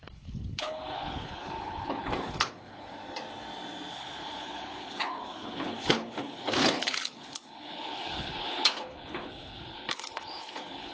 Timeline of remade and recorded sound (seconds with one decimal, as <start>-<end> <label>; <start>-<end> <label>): 0.0-3.0 remade; 3.0-3.9 recorded; 3.9-10.9 remade